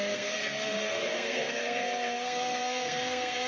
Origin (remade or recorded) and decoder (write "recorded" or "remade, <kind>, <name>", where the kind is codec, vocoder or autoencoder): remade, codec, SNAC